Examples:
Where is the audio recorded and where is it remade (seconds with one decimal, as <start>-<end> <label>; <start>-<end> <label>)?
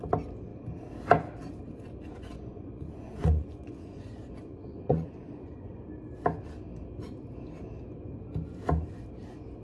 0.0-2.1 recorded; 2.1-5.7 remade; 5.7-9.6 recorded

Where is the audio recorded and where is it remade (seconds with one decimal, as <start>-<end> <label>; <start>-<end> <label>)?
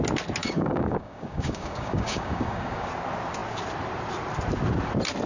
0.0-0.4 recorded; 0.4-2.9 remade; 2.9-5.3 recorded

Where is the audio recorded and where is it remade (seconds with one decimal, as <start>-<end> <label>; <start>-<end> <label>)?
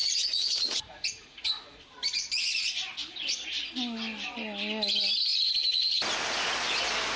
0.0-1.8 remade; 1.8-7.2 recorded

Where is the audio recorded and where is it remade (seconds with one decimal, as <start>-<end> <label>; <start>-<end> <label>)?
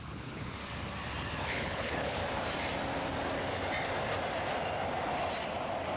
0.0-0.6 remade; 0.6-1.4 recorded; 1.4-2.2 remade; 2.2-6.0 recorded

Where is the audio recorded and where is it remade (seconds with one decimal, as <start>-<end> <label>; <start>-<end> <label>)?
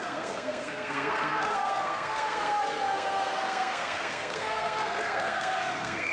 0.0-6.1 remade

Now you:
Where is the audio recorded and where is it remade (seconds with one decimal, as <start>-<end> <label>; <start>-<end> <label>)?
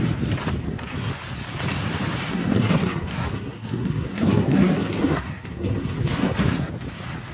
0.0-0.6 recorded; 0.6-1.1 remade; 1.1-2.3 recorded; 2.3-6.7 remade; 6.7-7.3 recorded